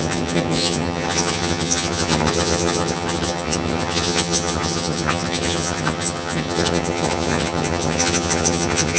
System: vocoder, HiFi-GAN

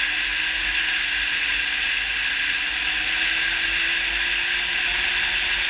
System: none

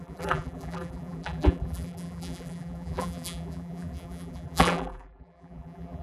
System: vocoder, BigVGAN v2